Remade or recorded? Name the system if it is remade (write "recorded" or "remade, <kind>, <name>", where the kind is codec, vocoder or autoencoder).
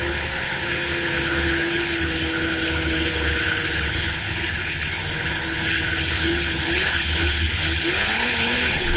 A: remade, codec, HILCodec